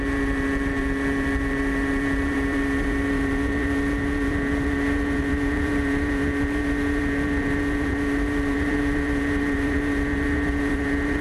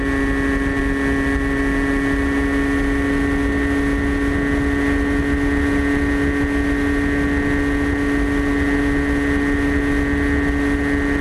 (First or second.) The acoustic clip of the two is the second